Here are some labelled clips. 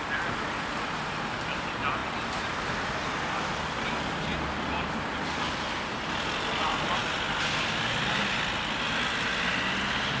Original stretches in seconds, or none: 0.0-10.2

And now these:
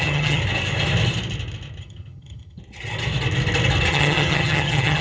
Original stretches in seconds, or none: 0.4-1.8; 2.6-3.9

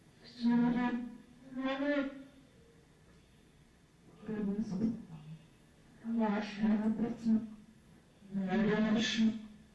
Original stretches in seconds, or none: 0.0-9.7

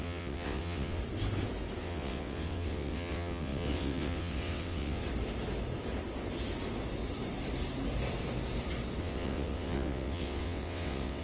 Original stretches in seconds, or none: 1.0-1.8; 5.0-9.0